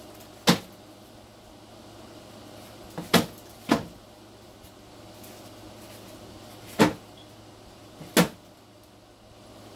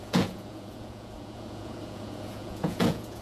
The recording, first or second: first